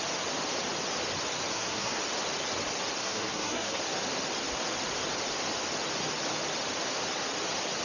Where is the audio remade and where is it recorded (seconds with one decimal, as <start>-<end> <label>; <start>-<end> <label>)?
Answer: 0.0-1.5 recorded; 1.5-2.0 remade; 2.0-3.0 recorded; 3.0-3.8 remade; 3.8-7.8 recorded